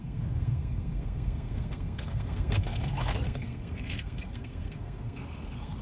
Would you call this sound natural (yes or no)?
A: no